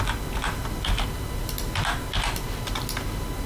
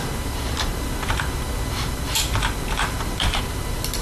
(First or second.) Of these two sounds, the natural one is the first